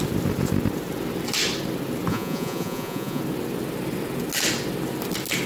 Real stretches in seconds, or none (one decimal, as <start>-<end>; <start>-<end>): 0.0-2.1; 3.2-5.5